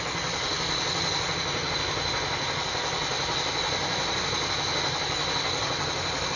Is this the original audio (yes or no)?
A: yes